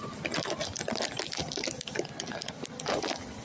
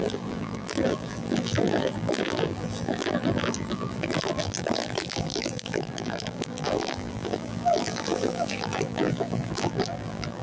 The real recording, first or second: first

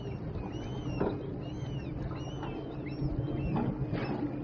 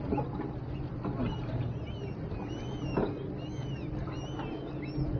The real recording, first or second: second